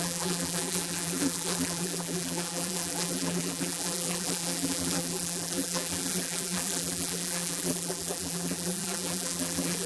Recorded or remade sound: remade